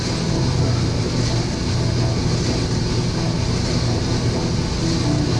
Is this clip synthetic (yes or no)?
no